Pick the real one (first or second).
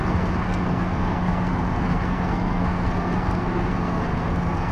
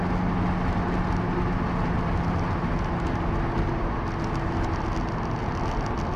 second